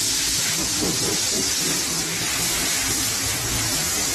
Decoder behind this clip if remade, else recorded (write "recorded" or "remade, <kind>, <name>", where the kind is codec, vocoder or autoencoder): remade, vocoder, BigVGAN v2